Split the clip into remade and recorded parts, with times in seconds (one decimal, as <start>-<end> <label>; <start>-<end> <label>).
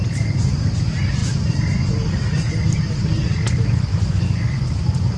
0.0-3.9 recorded; 3.9-4.7 remade; 4.7-5.2 recorded